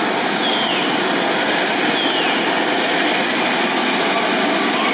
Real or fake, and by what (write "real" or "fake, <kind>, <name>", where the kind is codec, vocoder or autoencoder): real